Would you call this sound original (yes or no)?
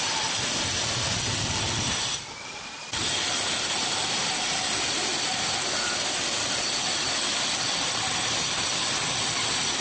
yes